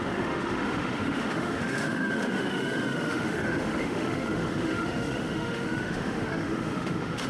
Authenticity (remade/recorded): remade